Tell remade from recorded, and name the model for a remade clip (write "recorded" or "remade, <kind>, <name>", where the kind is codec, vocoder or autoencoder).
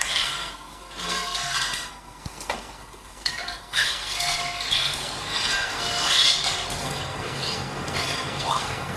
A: remade, codec, SNAC